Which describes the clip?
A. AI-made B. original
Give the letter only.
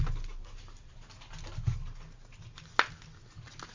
B